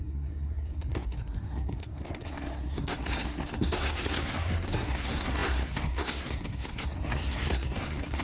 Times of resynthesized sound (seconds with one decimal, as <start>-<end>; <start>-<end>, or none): 0.0-8.2